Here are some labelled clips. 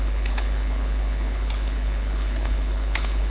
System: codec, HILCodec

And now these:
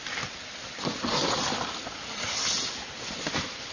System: none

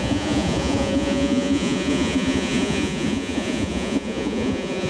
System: vocoder, Vocos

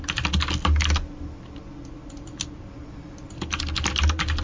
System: none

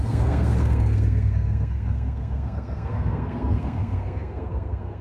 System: codec, SNAC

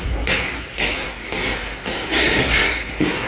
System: codec, SNAC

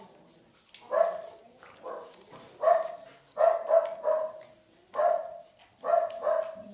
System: none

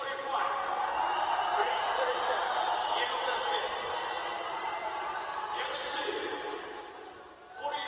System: none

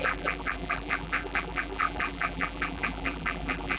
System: vocoder, BigVGAN v2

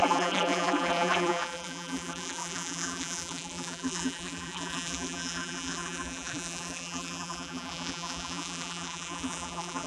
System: vocoder, BigVGAN v2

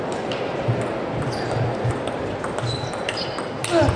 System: none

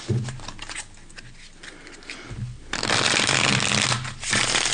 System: none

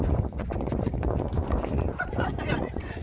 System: vocoder, Vocos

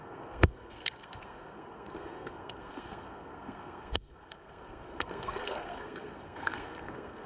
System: codec, SNAC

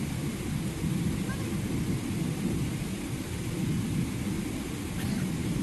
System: none